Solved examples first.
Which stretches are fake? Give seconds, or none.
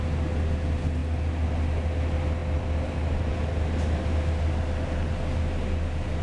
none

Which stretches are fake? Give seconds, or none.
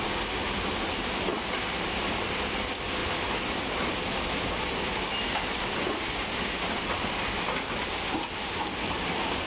none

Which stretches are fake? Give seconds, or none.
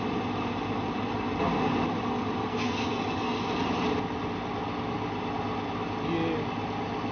2.5-3.0 (codec, SNAC)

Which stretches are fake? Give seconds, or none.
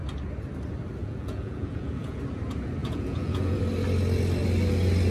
1.0-2.2 (vocoder, Vocos); 2.8-3.6